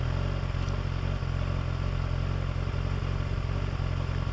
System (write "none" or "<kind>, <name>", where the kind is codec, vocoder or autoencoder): none